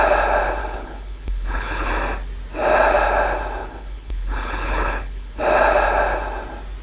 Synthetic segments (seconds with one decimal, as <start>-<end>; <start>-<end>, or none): 0.6-1.9; 3.6-5.4

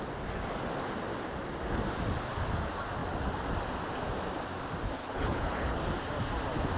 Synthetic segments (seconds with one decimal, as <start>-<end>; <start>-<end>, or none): 5.0-5.8

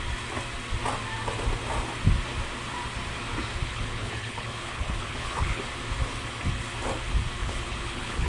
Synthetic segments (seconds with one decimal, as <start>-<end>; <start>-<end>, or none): 3.6-5.6; 7.4-8.3